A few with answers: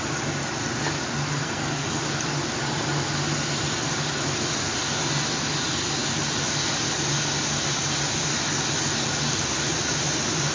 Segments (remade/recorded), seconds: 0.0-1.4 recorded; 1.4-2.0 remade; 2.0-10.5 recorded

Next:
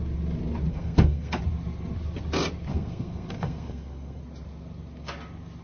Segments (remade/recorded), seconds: 0.0-0.7 recorded; 0.7-1.4 remade; 1.4-2.7 recorded; 2.7-4.2 remade; 4.2-5.6 recorded